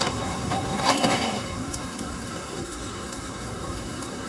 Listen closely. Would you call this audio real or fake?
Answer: fake